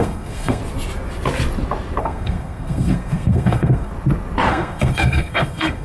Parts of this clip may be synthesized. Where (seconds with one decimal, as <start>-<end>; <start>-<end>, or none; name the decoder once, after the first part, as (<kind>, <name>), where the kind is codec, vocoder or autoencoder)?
0.0-0.6 (codec, SNAC); 2.0-3.9; 4.5-5.8